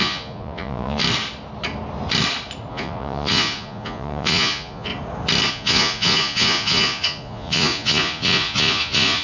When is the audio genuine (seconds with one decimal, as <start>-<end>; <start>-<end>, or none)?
1.0-2.7; 4.9-5.5